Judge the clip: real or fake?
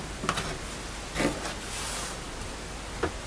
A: real